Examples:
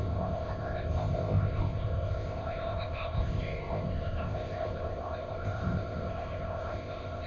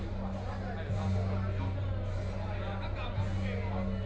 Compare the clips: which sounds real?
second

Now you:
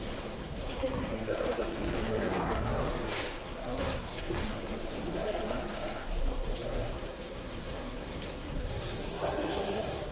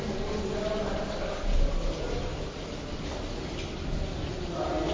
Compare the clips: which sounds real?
second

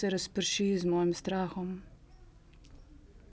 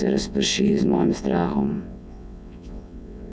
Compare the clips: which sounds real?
first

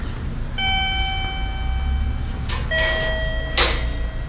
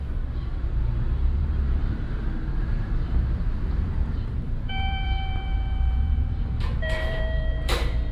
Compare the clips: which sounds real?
first